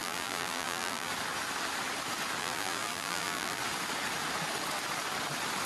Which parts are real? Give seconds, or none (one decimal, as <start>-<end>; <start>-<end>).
1.1-2.4; 3.6-5.7

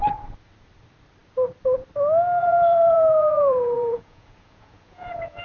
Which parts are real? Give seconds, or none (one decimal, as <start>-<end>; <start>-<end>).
0.0-2.4

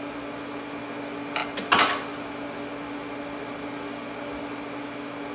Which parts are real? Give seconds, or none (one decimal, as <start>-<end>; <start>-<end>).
0.0-5.3

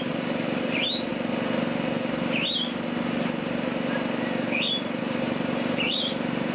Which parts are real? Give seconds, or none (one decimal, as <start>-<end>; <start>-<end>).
1.1-5.0

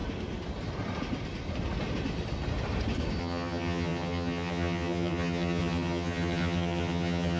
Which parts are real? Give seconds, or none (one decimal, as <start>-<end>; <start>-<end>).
0.0-3.2

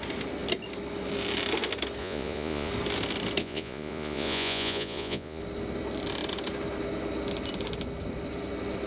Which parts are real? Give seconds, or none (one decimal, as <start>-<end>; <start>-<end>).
0.0-2.0; 2.7-3.4; 5.4-8.9